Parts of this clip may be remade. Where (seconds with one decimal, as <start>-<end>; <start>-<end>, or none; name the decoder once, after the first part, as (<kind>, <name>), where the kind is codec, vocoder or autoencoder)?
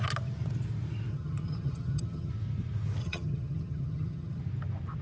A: 1.1-2.3 (vocoder, HiFi-GAN); 3.0-4.4